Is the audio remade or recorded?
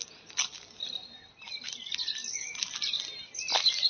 recorded